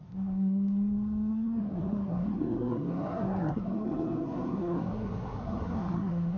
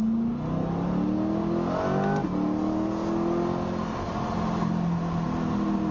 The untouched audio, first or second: second